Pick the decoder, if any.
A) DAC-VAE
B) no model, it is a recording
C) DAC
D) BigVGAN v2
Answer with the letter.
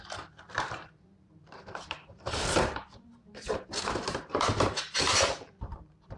D